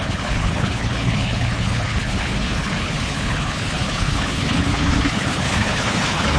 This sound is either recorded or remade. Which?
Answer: remade